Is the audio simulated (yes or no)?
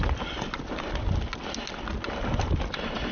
no